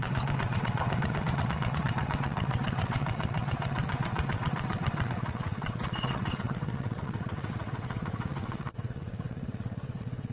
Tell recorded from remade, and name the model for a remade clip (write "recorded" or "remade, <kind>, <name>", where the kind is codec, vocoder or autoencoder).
remade, vocoder, WaveNeXt